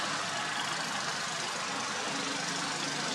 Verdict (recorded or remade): recorded